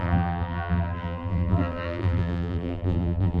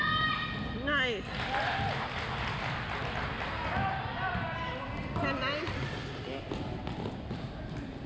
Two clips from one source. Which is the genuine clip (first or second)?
second